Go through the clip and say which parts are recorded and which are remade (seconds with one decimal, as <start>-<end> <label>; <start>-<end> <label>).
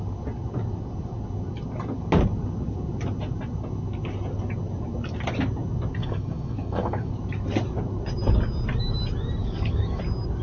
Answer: 0.0-6.0 recorded; 6.0-7.1 remade; 7.1-9.4 recorded; 9.4-10.0 remade; 10.0-10.4 recorded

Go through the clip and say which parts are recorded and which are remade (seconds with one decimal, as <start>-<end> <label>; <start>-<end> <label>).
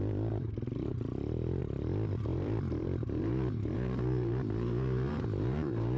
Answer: 0.0-2.3 recorded; 2.3-6.0 remade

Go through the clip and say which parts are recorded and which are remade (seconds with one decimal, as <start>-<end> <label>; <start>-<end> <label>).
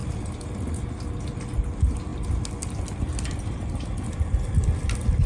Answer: 0.0-5.3 recorded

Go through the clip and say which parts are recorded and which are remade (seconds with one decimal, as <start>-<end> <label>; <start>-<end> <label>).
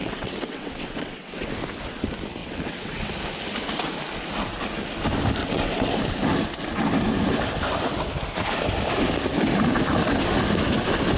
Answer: 0.0-1.5 remade; 1.5-2.4 recorded; 2.4-3.1 remade; 3.1-5.4 recorded; 5.4-5.9 remade; 5.9-11.2 recorded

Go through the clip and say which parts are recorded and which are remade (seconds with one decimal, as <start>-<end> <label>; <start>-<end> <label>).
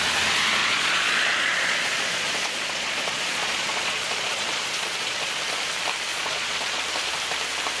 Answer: 0.0-0.6 recorded; 0.6-5.3 remade; 5.3-6.1 recorded; 6.1-6.8 remade; 6.8-7.8 recorded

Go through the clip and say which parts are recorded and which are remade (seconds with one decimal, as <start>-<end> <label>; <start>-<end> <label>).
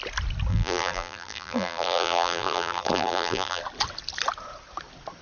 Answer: 0.0-0.5 recorded; 0.5-3.6 remade; 3.6-5.2 recorded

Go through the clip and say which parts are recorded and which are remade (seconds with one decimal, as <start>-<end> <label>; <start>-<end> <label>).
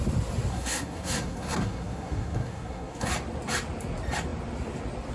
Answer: 0.0-0.5 recorded; 0.5-3.1 remade; 3.1-5.1 recorded